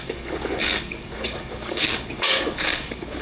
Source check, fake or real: fake